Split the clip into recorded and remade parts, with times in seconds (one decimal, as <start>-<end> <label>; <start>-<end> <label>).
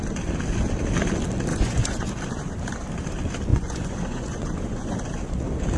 0.0-1.5 recorded; 1.5-2.1 remade; 2.1-3.5 recorded; 3.5-5.1 remade; 5.1-5.8 recorded